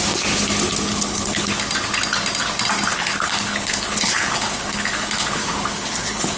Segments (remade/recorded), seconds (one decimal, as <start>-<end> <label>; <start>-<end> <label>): 0.0-0.9 recorded; 0.9-1.5 remade; 1.5-2.9 recorded; 2.9-6.4 remade